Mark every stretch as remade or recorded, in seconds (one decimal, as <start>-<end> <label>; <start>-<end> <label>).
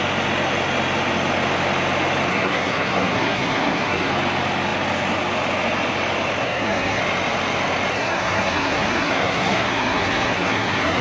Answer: 0.0-2.3 recorded; 2.3-4.1 remade; 4.1-6.4 recorded; 6.4-7.0 remade; 7.0-7.9 recorded; 7.9-11.0 remade